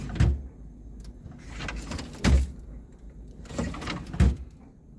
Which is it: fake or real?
real